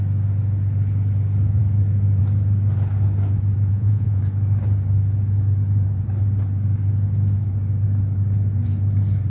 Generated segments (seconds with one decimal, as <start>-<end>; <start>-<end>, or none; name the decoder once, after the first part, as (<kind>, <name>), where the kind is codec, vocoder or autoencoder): 3.7-4.2 (vocoder, Vocos)